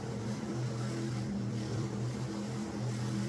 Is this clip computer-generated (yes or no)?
yes